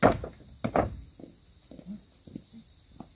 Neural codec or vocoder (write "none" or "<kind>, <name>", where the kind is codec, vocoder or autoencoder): none